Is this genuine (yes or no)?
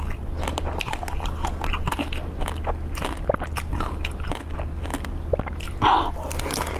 yes